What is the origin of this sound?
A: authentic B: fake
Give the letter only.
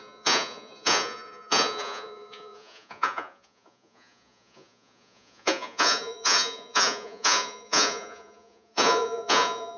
B